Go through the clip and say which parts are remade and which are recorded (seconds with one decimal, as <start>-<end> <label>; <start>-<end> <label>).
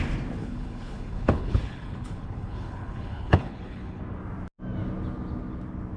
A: 0.0-0.4 recorded; 0.4-4.0 remade; 4.0-6.0 recorded